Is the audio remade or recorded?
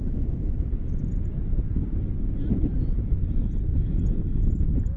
recorded